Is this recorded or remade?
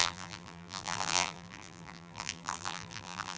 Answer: remade